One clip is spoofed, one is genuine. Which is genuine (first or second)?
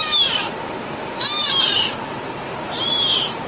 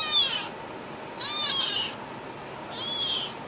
second